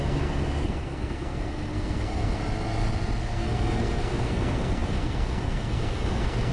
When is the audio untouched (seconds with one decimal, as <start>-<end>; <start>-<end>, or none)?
2.4-3.2